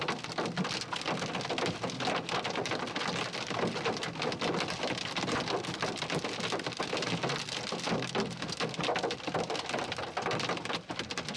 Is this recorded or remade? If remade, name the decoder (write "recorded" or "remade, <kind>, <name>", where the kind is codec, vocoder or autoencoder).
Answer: recorded